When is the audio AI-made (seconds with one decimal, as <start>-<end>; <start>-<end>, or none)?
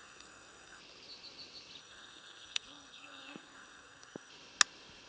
0.0-0.8; 1.8-4.3